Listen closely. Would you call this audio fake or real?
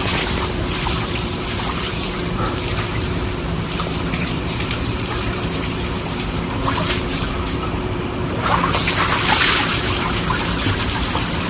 fake